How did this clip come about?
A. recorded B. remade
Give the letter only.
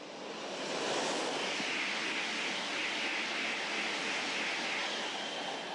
A